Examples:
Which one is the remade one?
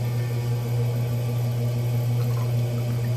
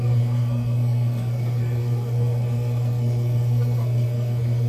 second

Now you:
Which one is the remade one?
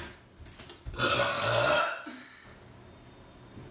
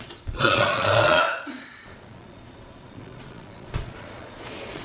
second